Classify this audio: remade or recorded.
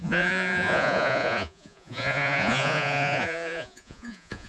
remade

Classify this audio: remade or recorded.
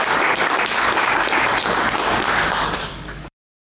remade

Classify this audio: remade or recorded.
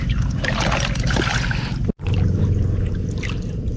recorded